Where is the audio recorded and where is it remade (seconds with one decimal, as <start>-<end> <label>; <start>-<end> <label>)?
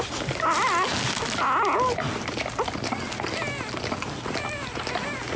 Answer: 0.0-5.4 recorded